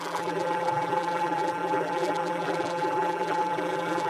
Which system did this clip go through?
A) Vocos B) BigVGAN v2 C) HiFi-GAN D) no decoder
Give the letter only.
B